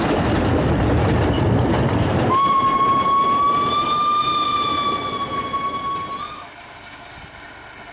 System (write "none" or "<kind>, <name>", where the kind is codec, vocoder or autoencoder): none